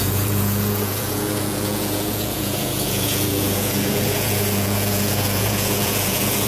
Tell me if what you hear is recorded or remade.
remade